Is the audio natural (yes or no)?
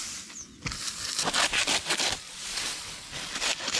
yes